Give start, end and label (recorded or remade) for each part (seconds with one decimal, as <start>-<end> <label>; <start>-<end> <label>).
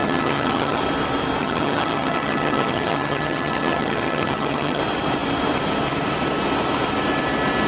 0.0-0.8 remade; 0.8-1.4 recorded; 1.4-4.8 remade; 4.8-7.7 recorded